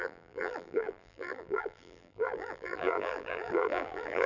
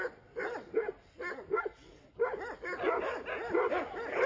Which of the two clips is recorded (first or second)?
second